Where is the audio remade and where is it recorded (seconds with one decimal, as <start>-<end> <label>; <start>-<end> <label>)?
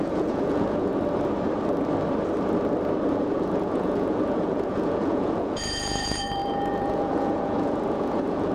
0.0-0.9 remade; 0.9-3.1 recorded; 3.1-8.5 remade